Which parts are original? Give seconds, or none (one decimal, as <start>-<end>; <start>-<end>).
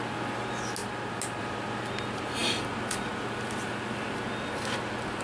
0.0-5.2